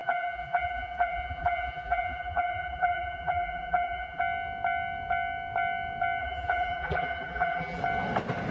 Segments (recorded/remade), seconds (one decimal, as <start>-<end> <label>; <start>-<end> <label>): 0.0-4.2 remade; 4.2-6.2 recorded; 6.2-7.8 remade; 7.8-8.5 recorded